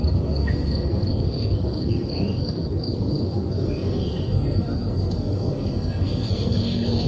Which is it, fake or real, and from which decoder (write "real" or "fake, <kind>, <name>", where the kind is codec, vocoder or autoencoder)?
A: fake, codec, SNAC